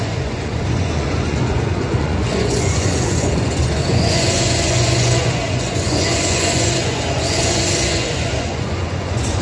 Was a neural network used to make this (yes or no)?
yes